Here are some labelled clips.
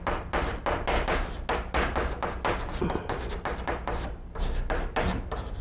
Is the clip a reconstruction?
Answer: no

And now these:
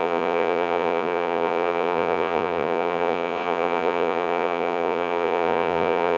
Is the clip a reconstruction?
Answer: yes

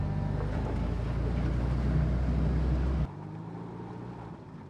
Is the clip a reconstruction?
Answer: no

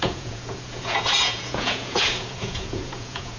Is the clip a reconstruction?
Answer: yes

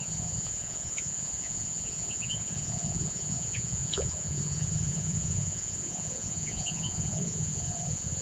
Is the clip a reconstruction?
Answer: yes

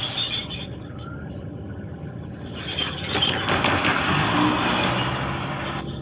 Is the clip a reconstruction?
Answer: no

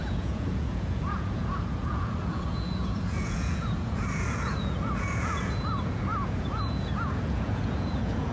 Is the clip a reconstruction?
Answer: yes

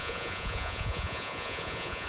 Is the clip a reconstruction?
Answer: yes